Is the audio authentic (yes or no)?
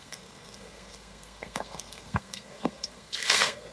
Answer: no